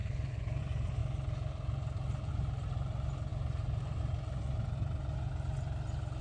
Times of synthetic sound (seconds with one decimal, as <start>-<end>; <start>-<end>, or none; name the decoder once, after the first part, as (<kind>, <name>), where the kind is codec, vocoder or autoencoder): 0.0-0.6 (codec, HILCodec)